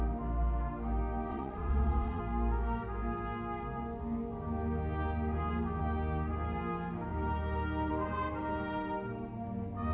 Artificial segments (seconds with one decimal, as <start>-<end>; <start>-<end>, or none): 1.3-2.2